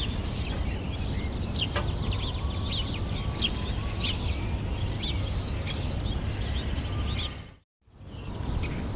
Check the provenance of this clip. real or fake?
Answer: real